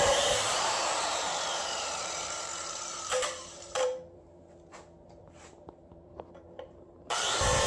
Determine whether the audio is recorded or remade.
remade